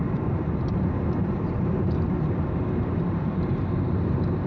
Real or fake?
fake